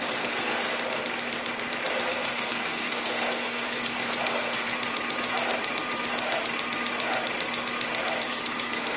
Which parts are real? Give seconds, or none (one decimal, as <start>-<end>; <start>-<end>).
0.7-2.1; 4.7-8.3